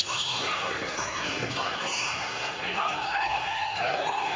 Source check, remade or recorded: remade